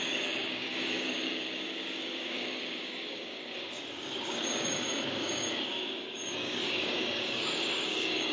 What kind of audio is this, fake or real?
fake